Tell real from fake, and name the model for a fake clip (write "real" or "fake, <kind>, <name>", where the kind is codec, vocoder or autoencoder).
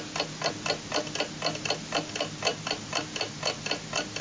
real